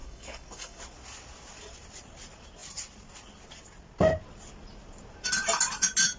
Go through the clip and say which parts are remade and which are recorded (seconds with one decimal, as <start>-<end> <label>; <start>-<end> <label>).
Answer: 0.0-0.8 remade; 0.8-6.2 recorded